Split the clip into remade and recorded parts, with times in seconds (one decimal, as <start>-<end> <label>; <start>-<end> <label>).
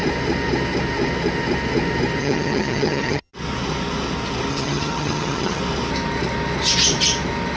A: 0.0-2.2 recorded; 2.2-3.3 remade; 3.3-4.5 recorded; 4.5-5.6 remade; 5.6-7.6 recorded